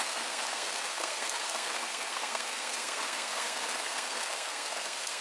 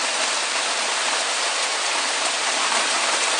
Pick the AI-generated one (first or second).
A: first